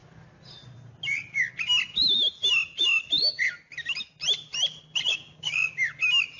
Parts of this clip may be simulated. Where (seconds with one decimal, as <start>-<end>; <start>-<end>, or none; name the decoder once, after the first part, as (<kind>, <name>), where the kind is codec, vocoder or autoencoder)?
5.1-5.7 (codec, DAC)